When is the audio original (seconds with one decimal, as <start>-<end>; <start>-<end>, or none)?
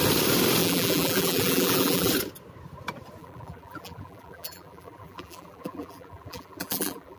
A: 0.0-0.6; 2.1-3.2